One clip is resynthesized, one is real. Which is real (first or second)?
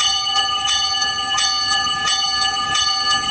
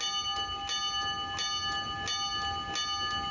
second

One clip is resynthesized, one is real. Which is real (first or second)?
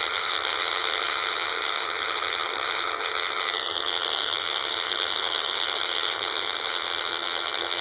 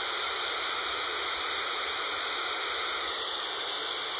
second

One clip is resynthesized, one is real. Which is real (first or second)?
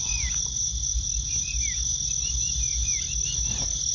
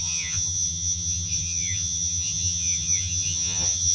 first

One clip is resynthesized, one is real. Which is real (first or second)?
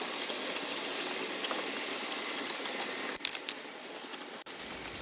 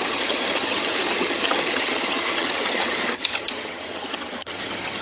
first